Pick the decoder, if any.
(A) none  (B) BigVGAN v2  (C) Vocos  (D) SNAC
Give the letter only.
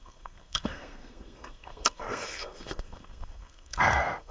D